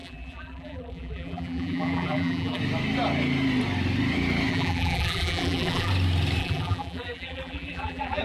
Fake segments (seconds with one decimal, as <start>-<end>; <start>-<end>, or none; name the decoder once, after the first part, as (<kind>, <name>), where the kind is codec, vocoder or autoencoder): 0.0-2.6 (vocoder, BigVGAN v2); 4.5-5.9; 6.4-8.2